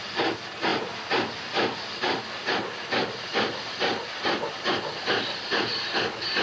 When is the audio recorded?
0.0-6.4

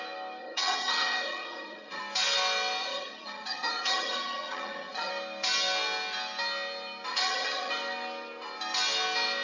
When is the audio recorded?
0.0-0.4; 2.0-2.8; 5.1-7.1; 7.7-9.4

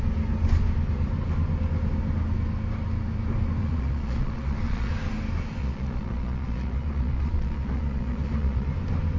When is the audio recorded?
0.0-3.6; 4.9-5.6; 8.7-9.2